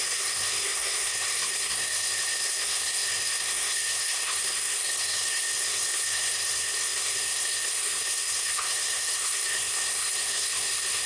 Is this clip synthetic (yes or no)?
yes